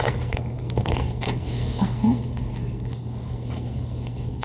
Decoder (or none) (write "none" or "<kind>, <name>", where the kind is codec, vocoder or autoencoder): codec, SNAC